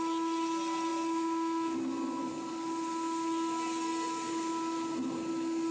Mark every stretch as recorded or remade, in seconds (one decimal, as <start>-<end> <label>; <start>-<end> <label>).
0.0-5.7 recorded